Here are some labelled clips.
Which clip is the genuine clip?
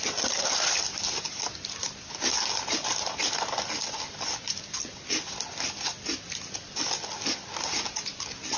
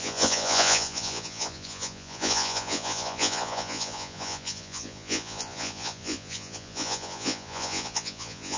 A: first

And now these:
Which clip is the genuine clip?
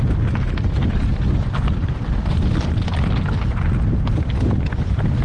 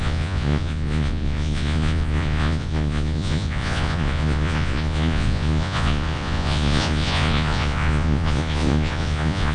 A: first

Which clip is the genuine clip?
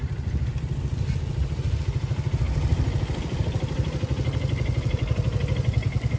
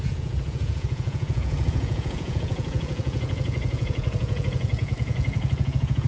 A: first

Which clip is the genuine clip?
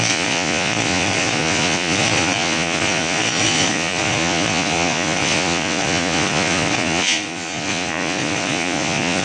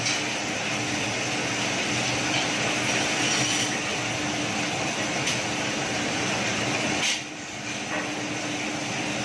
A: second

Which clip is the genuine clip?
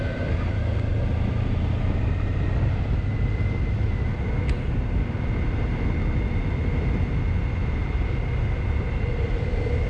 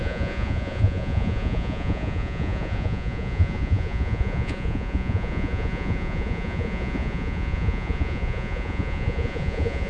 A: first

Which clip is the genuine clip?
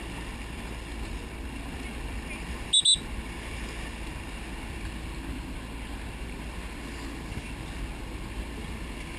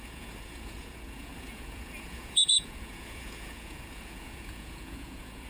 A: first